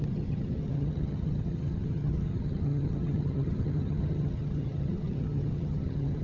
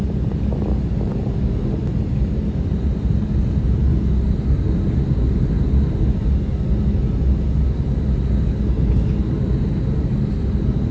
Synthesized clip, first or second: first